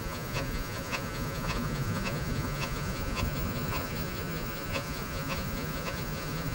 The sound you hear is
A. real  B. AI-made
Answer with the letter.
B